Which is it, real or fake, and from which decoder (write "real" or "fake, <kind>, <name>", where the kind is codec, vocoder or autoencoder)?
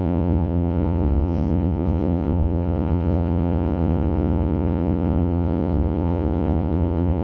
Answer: fake, vocoder, Vocos